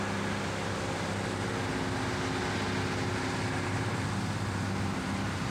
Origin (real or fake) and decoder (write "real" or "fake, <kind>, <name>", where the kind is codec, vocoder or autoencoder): real